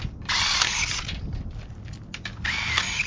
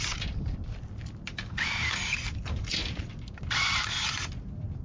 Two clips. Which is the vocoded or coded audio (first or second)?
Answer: second